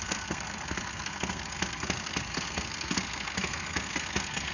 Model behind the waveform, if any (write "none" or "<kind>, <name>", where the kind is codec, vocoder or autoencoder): codec, SNAC